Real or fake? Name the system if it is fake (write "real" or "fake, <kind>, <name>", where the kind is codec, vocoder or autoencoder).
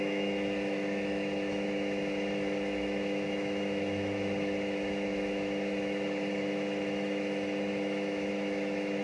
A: fake, autoencoder, DAC-VAE